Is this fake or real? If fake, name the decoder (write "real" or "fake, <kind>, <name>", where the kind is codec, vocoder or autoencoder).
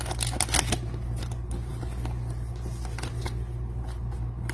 real